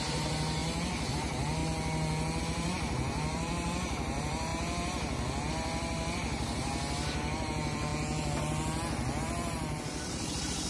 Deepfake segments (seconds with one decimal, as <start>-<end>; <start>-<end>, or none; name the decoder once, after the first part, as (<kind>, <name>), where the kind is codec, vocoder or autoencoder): 0.0-0.6 (vocoder, BigVGAN v2); 1.1-1.6; 2.4-4.5; 5.5-7.9; 9.2-10.7